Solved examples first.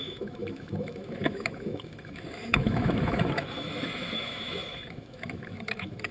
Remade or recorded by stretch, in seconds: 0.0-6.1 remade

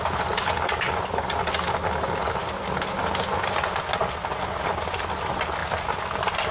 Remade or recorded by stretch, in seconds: 0.0-6.5 recorded

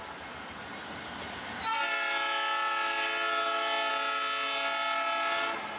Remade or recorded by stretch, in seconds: 0.0-5.8 recorded

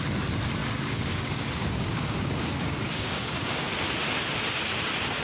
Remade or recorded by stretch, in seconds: 0.0-0.6 recorded; 0.6-3.7 remade; 3.7-5.2 recorded

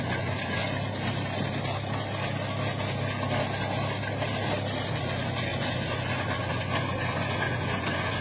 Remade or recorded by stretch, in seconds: 0.0-0.6 remade; 0.6-4.9 recorded; 4.9-8.2 remade

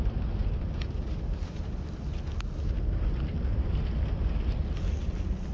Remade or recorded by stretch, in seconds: 0.0-0.4 recorded; 0.4-2.0 remade; 2.0-5.5 recorded

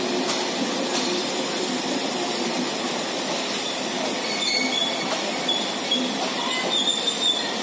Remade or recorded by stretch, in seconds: 0.0-1.2 recorded; 1.2-2.3 remade; 2.3-7.6 recorded